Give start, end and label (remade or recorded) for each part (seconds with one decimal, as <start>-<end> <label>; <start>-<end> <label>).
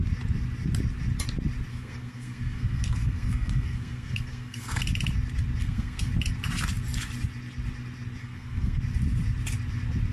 0.0-1.7 recorded; 1.7-4.8 remade; 4.8-5.6 recorded; 5.6-6.1 remade; 6.1-8.2 recorded; 8.2-8.8 remade; 8.8-10.1 recorded